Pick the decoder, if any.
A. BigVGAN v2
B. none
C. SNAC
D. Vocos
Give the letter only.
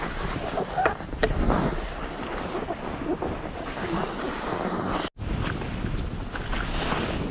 B